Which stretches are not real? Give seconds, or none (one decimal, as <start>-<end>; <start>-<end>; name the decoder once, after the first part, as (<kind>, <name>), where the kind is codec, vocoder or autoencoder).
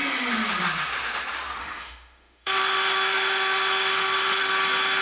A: 1.6-4.4 (autoencoder, DAC-VAE)